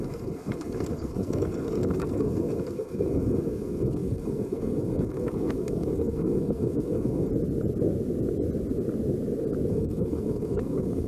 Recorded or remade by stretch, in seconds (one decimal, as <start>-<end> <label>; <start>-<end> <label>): 0.0-7.3 remade; 7.3-9.7 recorded; 9.7-11.1 remade